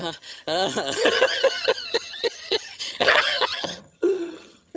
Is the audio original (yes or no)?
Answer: no